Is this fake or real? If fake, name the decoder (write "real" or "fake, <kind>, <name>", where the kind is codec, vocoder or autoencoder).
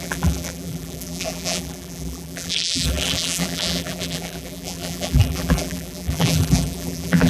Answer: fake, vocoder, BigVGAN v2